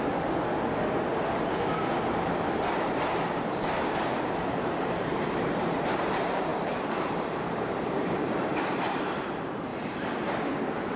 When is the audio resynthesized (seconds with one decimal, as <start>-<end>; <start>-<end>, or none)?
0.0-9.7